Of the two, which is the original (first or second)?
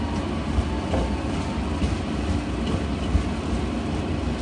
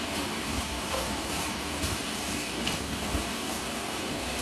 first